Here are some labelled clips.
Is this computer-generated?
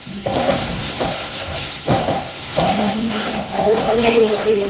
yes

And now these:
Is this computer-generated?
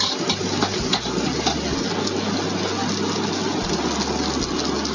no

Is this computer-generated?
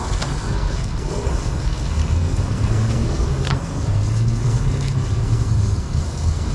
yes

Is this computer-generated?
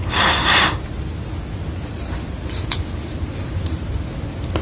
no